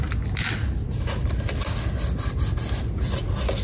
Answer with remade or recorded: recorded